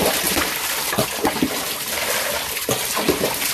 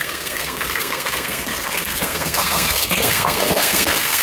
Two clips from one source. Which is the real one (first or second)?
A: first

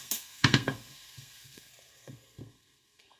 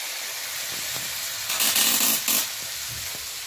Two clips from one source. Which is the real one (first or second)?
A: second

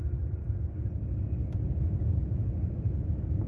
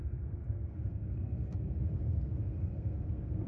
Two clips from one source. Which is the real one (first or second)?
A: first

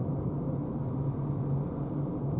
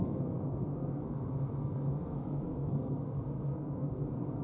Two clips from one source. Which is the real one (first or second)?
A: first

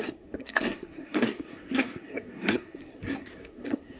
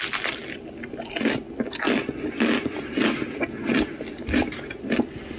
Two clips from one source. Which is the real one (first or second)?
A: second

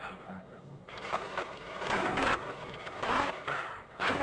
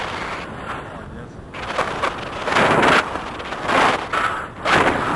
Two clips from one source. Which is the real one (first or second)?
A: second